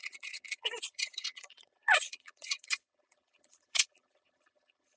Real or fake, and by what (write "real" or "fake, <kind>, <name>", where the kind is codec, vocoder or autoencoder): fake, vocoder, Vocos